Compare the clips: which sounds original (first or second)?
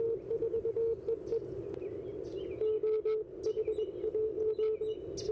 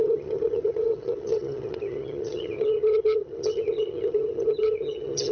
first